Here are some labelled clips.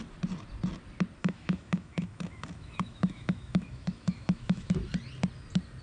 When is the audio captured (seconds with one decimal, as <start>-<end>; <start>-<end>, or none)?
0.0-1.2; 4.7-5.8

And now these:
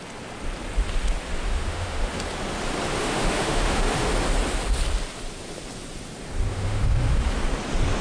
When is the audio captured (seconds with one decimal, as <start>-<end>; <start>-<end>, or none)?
0.0-1.5; 2.1-3.0; 4.1-6.5; 7.2-8.0

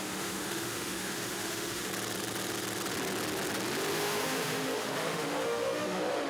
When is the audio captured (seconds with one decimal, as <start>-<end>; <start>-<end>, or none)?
1.9-3.9

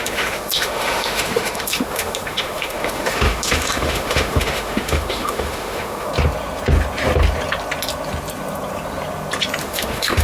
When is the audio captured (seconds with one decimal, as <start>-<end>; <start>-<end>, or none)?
6.1-9.6